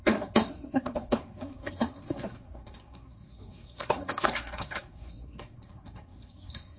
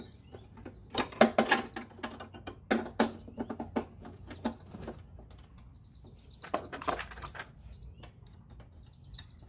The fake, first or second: first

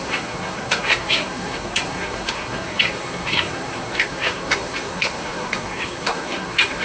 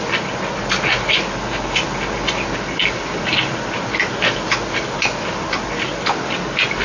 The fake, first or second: first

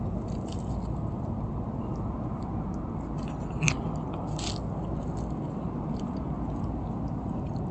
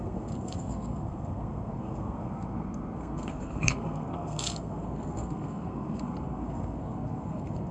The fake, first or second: second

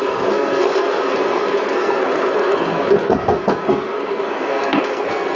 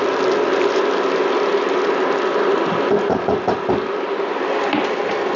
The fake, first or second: first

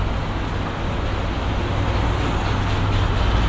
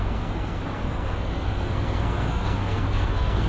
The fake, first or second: second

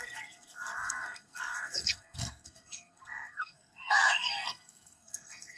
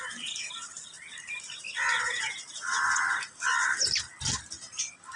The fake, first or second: first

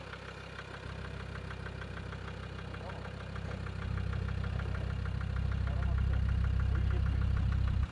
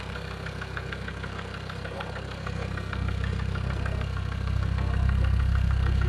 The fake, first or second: second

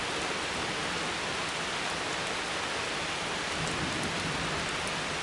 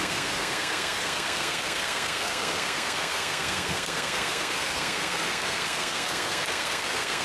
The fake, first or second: second